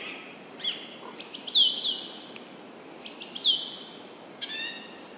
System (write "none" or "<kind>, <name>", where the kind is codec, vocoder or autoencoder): none